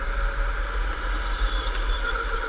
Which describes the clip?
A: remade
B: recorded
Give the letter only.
B